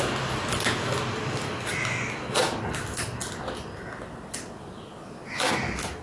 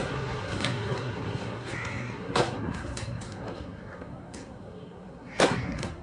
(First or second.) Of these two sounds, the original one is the first